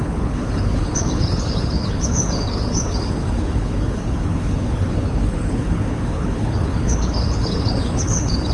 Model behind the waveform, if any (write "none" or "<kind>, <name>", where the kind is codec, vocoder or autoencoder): codec, HILCodec